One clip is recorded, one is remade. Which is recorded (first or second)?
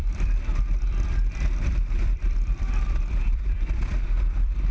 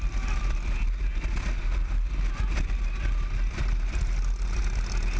second